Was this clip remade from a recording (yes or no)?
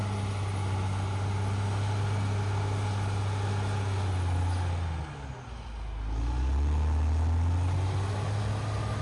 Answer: no